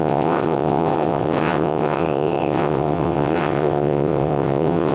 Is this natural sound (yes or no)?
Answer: no